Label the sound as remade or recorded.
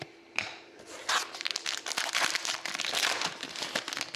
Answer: recorded